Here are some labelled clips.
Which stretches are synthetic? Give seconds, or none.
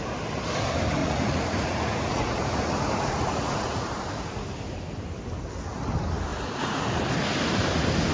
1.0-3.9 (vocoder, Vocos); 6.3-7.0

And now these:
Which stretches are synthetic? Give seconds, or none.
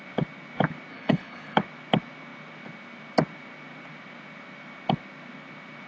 0.9-1.6 (codec, HILCodec)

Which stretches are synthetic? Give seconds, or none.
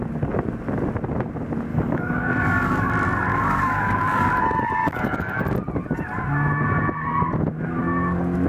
1.7-2.9 (codec, DAC); 3.3-4.3; 4.8-5.4